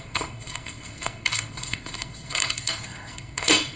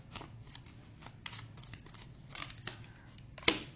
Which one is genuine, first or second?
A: second